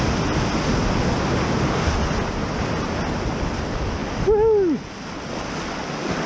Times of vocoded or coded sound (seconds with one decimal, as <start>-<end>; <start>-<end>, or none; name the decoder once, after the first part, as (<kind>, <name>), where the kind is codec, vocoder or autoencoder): none